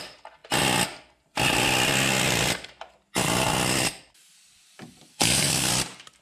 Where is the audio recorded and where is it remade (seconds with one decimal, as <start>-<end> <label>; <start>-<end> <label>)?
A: 0.0-5.1 recorded; 5.1-5.7 remade; 5.7-6.2 recorded